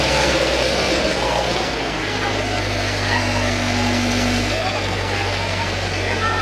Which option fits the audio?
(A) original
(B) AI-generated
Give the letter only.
B